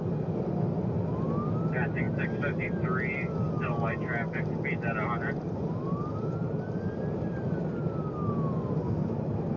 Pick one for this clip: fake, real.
real